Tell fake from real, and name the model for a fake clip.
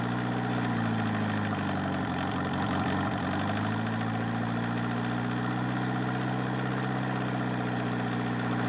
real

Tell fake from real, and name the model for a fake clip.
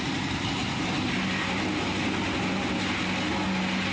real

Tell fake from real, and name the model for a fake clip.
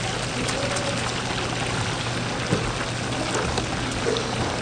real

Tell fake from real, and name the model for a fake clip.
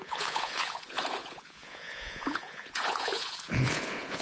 fake, vocoder, Vocos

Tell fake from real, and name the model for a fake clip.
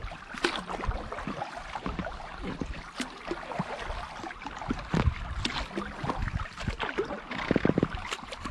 real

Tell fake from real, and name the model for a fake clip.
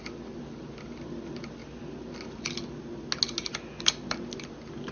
real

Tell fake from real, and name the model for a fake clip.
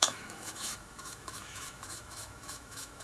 fake, autoencoder, DAC-VAE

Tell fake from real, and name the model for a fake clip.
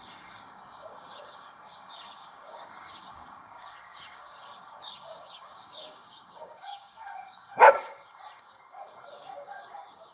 fake, codec, DAC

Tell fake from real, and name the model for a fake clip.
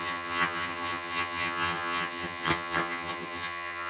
fake, vocoder, HiFi-GAN